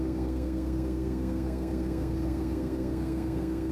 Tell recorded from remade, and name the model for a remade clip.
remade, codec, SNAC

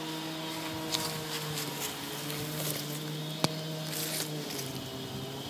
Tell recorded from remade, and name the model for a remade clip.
recorded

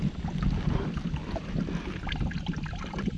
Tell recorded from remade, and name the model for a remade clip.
recorded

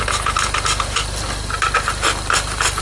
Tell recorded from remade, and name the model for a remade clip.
recorded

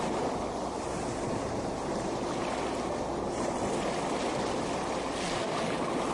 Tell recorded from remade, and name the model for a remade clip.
recorded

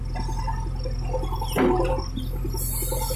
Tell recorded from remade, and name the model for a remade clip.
recorded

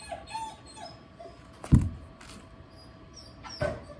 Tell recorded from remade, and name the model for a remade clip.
recorded